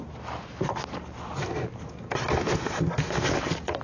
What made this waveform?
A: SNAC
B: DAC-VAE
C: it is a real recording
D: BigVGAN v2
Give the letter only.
C